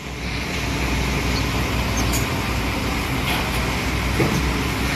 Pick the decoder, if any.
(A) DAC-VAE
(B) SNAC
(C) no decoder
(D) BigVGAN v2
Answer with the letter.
C